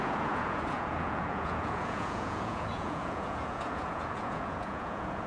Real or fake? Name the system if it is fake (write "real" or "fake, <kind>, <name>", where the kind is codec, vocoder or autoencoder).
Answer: fake, vocoder, Vocos